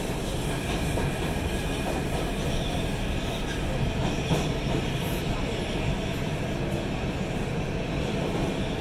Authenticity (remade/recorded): recorded